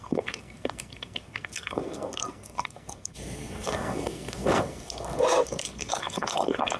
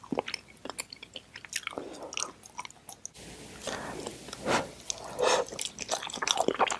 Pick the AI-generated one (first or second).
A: first